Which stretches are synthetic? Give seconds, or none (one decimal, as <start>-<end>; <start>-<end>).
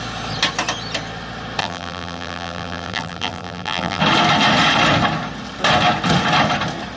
1.6-4.0